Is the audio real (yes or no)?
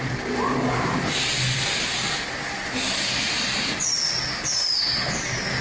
yes